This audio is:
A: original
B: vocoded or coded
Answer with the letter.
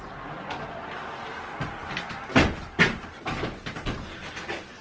A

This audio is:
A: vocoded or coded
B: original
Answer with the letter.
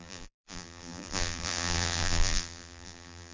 A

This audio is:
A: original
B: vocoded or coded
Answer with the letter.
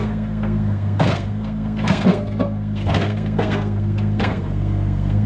B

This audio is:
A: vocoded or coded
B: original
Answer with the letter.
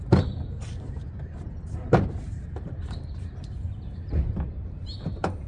A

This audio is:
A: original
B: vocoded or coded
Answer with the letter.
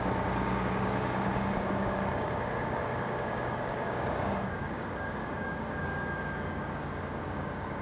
B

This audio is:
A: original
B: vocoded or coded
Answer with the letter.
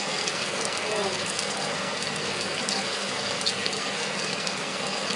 B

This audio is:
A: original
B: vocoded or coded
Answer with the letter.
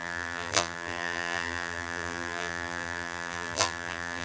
B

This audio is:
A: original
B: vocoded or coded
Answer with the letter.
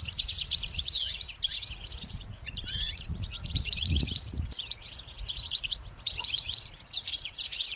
B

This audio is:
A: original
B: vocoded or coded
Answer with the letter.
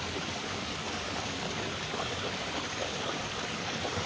B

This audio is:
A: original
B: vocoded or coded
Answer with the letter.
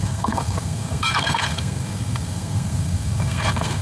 B